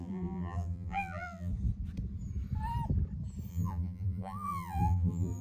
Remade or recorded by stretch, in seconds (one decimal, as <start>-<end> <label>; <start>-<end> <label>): 0.0-1.5 remade; 1.5-3.5 recorded; 3.5-5.4 remade

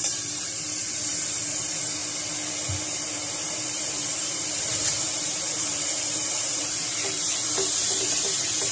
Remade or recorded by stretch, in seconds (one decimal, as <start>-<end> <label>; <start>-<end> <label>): 0.0-2.0 remade; 2.0-2.8 recorded; 2.8-8.7 remade

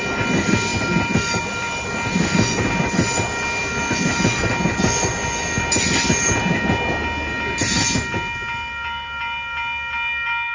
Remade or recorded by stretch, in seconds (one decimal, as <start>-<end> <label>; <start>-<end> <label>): 0.0-10.5 recorded